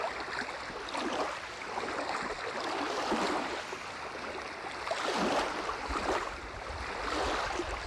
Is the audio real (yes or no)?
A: yes